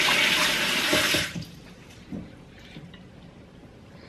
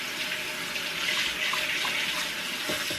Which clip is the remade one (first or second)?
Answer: first